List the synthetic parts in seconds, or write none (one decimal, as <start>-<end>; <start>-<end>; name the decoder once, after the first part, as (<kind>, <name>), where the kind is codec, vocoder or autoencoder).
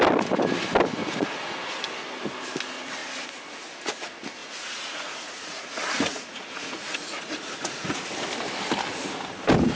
1.0-1.8 (vocoder, Vocos); 4.4-8.0